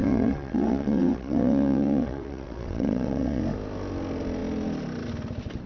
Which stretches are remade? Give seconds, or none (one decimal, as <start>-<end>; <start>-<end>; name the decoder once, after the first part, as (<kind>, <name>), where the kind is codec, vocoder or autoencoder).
0.0-3.4 (vocoder, WaveNeXt)

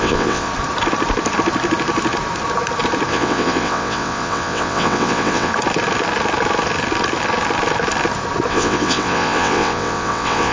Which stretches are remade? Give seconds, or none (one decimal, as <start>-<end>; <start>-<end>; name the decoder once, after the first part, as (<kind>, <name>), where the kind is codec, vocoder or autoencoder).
0.0-0.5 (vocoder, WaveNeXt); 3.1-5.5; 8.5-10.5

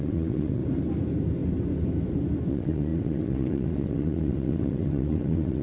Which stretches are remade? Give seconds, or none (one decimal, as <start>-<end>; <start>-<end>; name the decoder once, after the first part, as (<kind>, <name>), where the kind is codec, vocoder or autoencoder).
0.0-0.6 (vocoder, WaveNeXt); 2.5-5.6